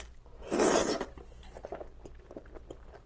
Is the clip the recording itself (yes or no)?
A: yes